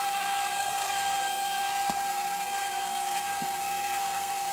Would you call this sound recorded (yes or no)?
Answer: no